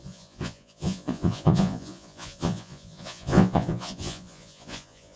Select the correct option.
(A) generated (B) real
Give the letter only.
A